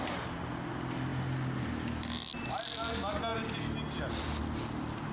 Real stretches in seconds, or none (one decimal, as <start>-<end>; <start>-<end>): 0.0-5.1